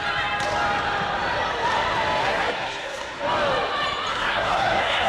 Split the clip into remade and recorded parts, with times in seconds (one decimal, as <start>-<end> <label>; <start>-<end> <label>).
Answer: 0.0-2.2 recorded; 2.2-3.2 remade; 3.2-4.1 recorded; 4.1-5.1 remade